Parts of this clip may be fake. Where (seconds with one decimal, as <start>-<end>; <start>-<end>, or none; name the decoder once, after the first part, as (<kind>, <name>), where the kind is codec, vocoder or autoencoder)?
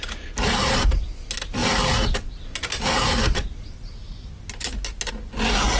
none